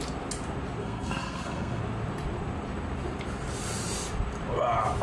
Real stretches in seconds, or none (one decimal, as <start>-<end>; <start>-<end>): 0.0-0.8; 1.8-5.0